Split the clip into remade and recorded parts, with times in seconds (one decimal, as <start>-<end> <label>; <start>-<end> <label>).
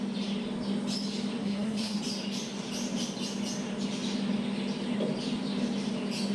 0.0-1.4 recorded; 1.4-2.0 remade; 2.0-6.3 recorded